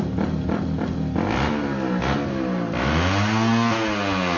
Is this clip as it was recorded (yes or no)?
yes